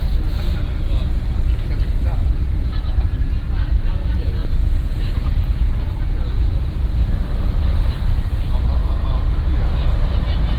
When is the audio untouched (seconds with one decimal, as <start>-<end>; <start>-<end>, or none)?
0.0-2.2; 3.0-4.4; 6.9-8.8; 9.5-10.6

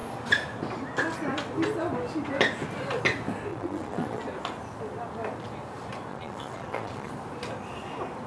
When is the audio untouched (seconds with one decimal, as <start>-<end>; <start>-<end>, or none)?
0.0-3.5; 4.2-6.1; 7.1-8.3

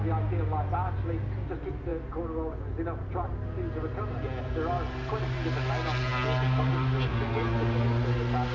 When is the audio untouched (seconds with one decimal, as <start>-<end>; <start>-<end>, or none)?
0.0-8.5

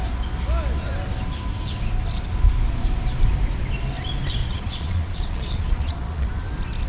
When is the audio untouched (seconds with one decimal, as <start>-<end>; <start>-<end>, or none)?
0.0-4.4; 6.3-6.9